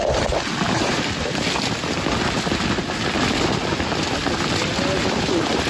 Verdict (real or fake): real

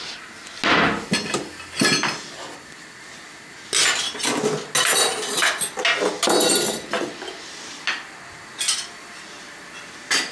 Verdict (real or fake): real